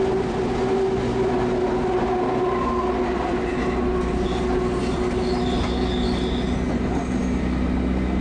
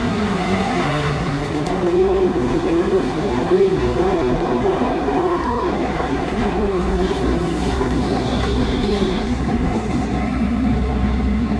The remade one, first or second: second